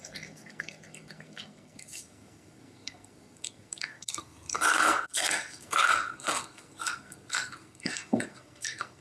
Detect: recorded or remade remade